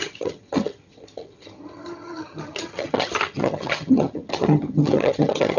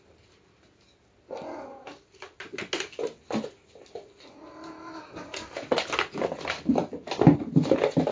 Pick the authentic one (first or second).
second